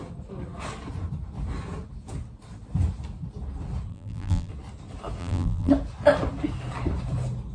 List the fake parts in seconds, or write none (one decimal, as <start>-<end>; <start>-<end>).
3.9-4.5; 5.2-5.7